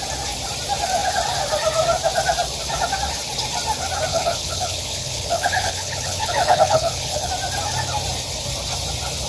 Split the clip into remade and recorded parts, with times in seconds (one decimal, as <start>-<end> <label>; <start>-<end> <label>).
0.0-4.1 recorded; 4.1-7.3 remade; 7.3-9.3 recorded

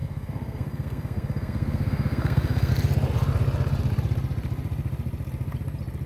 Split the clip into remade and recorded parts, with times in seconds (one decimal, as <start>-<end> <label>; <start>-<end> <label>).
0.0-2.7 remade; 2.7-6.1 recorded

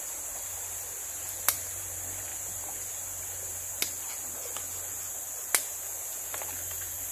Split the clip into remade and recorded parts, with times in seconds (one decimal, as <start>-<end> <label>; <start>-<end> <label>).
0.0-7.1 recorded

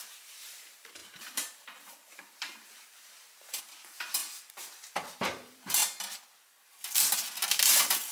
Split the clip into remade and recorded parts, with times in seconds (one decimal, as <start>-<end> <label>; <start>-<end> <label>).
0.0-4.2 remade; 4.2-5.2 recorded; 5.2-5.8 remade; 5.8-7.3 recorded; 7.3-8.1 remade

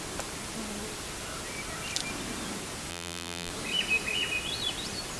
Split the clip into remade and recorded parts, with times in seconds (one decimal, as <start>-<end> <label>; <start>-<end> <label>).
0.0-2.9 recorded; 2.9-3.5 remade; 3.5-5.2 recorded

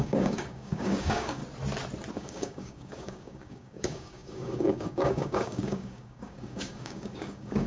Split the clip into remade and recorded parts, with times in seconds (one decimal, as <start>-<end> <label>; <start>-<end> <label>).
0.0-1.4 remade; 1.4-2.1 recorded; 2.1-7.7 remade

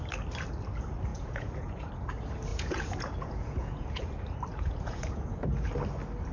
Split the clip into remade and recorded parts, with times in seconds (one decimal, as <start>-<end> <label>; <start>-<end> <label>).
0.0-1.1 recorded; 1.1-1.9 remade; 1.9-2.5 recorded; 2.5-4.1 remade; 4.1-4.5 recorded; 4.5-5.7 remade; 5.7-6.3 recorded

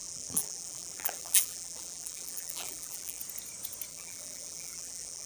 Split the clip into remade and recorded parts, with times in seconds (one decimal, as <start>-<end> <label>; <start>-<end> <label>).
0.0-3.2 remade; 3.2-3.9 recorded; 3.9-5.3 remade